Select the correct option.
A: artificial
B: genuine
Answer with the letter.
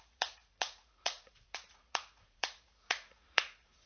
A